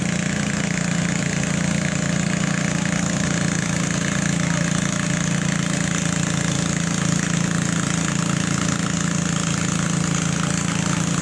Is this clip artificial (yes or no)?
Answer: no